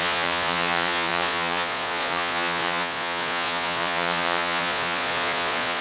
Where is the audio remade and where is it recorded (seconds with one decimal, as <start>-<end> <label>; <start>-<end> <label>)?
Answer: 0.0-5.8 remade